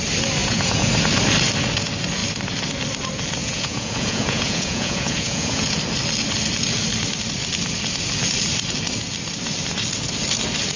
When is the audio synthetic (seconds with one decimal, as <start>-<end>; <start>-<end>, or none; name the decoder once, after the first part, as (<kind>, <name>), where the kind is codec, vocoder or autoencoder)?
0.4-0.9 (vocoder, Vocos); 3.4-5.8